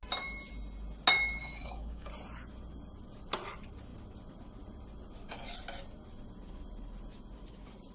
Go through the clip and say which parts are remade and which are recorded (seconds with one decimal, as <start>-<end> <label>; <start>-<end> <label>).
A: 0.0-1.4 recorded; 1.4-2.1 remade; 2.1-7.9 recorded